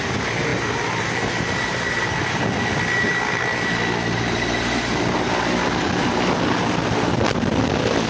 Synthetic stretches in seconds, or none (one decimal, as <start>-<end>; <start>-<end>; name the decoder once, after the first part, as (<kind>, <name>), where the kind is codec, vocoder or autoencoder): none